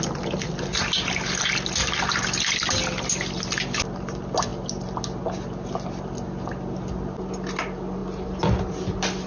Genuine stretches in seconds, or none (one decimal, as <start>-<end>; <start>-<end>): 0.0-9.3